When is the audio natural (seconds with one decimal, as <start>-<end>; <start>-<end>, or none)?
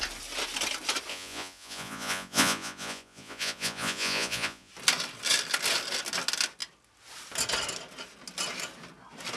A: 0.0-1.1; 4.7-9.4